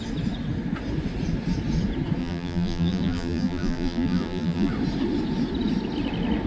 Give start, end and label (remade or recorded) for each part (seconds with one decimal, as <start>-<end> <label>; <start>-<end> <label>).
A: 0.0-2.2 recorded; 2.2-4.7 remade; 4.7-6.5 recorded